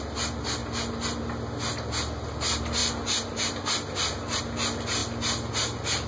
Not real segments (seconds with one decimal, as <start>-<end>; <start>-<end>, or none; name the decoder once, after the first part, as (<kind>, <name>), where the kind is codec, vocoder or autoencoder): none